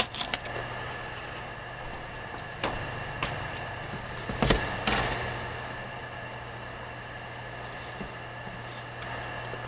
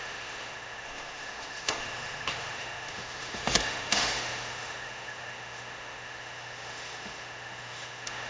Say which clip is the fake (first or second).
second